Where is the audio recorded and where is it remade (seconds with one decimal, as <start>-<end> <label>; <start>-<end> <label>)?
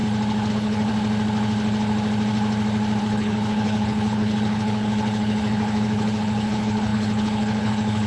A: 0.0-0.5 recorded; 0.5-0.9 remade; 0.9-3.0 recorded; 3.0-8.1 remade